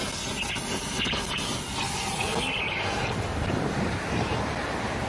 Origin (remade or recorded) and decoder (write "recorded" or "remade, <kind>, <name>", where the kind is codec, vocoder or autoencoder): recorded